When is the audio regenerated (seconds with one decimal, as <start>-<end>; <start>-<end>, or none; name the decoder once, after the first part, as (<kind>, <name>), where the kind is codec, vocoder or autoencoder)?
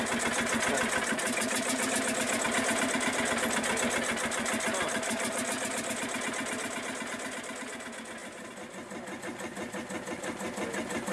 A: none